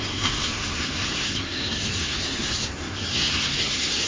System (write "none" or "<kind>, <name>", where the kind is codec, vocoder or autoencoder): codec, SNAC